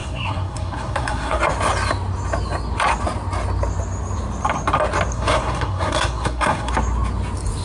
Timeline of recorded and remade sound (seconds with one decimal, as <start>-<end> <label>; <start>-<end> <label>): 0.0-1.4 remade; 1.4-5.1 recorded; 5.1-6.7 remade; 6.7-7.6 recorded